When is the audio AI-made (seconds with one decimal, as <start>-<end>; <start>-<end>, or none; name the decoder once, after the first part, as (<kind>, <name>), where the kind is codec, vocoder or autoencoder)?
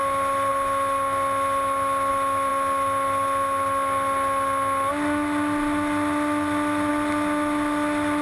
none